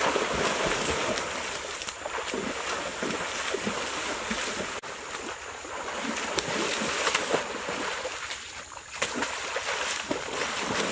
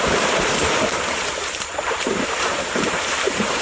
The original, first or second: first